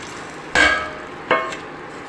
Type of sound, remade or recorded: recorded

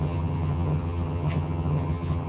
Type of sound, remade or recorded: remade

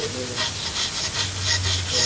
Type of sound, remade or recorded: recorded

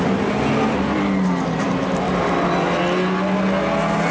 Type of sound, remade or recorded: recorded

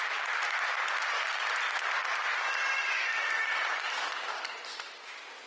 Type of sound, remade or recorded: recorded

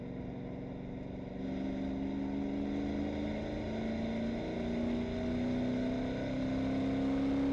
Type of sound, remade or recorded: recorded